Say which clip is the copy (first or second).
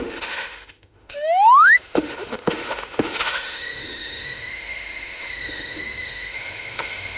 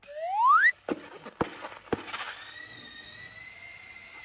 first